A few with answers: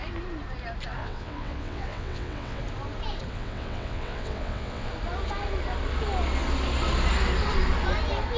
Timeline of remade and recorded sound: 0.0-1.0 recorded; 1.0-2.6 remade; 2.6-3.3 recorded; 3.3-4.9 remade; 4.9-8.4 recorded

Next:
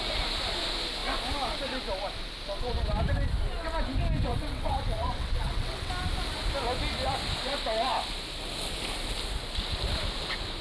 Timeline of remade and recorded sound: 0.0-4.3 recorded; 4.3-5.9 remade; 5.9-10.6 recorded

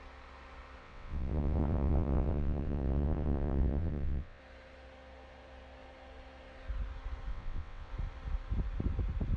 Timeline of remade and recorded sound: 0.0-0.8 recorded; 0.8-4.4 remade; 4.4-7.3 recorded; 7.3-7.9 remade; 7.9-9.4 recorded

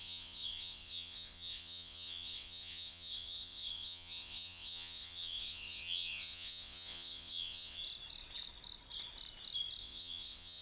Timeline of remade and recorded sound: 0.0-7.8 remade; 7.8-9.8 recorded; 9.8-10.6 remade